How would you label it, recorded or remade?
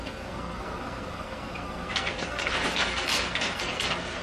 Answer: remade